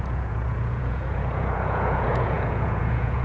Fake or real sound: fake